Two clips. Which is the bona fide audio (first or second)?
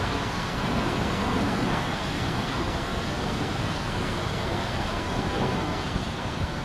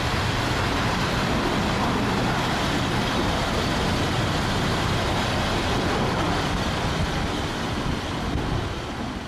second